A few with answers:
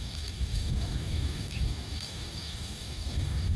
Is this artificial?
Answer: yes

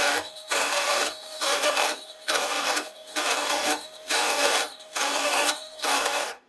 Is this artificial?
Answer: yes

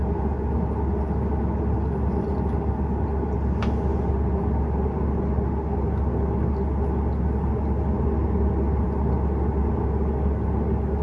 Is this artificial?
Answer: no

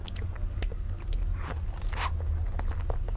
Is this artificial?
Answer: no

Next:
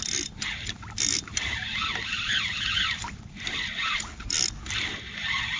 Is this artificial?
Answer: no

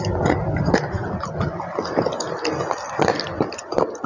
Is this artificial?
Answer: no